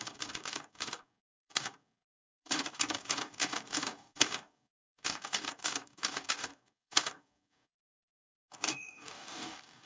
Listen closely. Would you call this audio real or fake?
fake